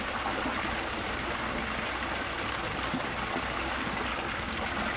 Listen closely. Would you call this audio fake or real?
real